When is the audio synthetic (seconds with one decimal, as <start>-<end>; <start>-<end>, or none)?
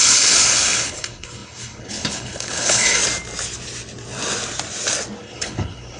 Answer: 0.0-3.0; 5.2-6.0